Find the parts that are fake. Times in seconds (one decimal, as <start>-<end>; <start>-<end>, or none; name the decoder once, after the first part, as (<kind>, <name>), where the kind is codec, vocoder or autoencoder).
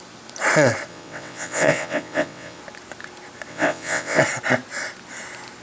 0.9-2.6 (vocoder, WaveNeXt); 3.5-4.2